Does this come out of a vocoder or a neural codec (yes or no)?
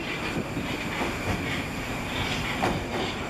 no